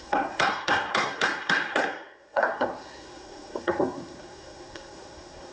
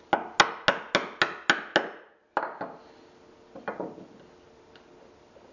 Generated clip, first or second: first